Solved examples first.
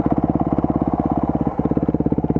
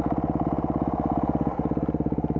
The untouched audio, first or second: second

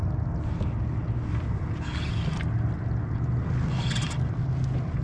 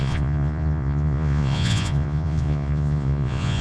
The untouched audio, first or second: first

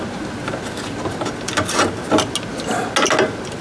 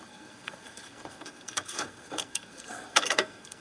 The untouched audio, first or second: first